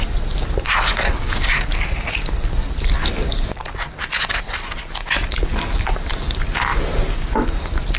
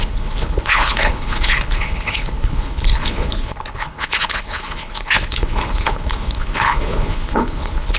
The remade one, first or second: second